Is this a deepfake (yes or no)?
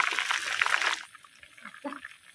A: no